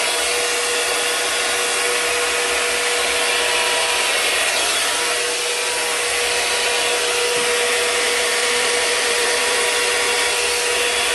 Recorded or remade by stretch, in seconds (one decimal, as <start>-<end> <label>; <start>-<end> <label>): 0.0-8.4 recorded; 8.4-9.6 remade; 9.6-11.1 recorded